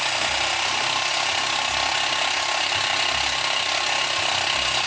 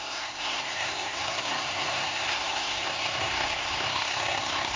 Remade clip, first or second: second